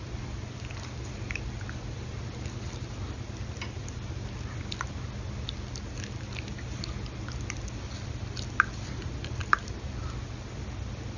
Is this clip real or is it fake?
real